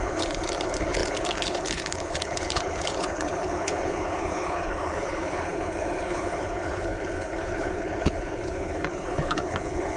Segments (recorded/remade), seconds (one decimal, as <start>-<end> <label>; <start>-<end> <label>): 0.0-10.0 remade